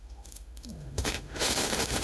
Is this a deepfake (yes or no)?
yes